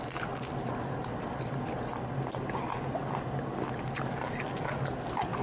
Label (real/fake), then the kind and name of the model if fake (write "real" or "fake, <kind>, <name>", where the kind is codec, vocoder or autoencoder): real